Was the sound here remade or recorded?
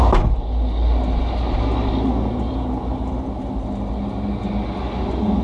recorded